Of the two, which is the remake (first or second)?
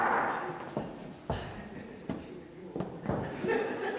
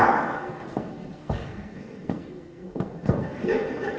second